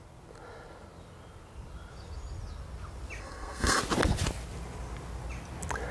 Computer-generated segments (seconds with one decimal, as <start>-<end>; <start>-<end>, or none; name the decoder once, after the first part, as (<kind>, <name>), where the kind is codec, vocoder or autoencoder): 3.2-3.8 (codec, SNAC)